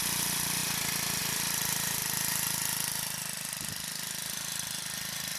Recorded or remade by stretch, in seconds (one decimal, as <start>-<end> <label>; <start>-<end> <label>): 0.0-0.6 remade; 0.6-1.2 recorded; 1.2-2.0 remade; 2.0-4.3 recorded; 4.3-5.4 remade